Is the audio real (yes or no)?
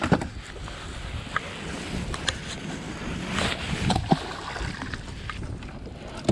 yes